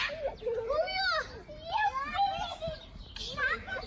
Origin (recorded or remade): recorded